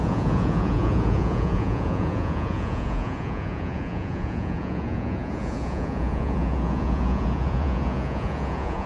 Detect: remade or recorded remade